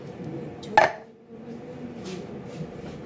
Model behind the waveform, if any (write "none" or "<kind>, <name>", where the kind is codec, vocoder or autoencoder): none